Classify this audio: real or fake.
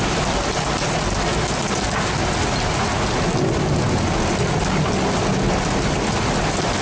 real